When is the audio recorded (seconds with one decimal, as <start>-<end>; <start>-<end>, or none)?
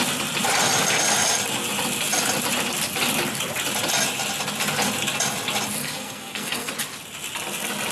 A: 0.0-5.8; 6.7-7.9